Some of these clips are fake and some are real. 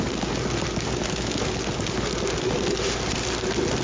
real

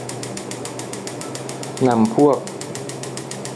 fake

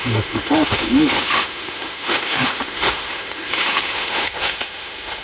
fake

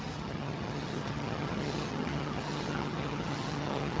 fake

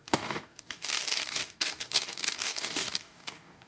fake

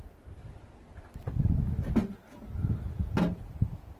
real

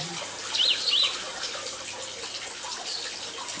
real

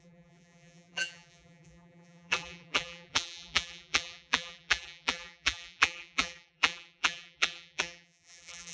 fake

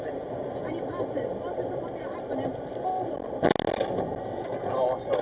real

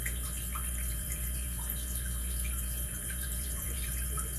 fake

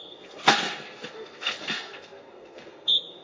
fake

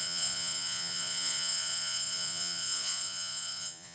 fake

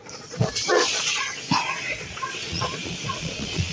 fake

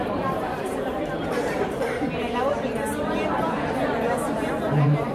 fake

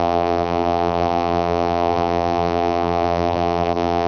fake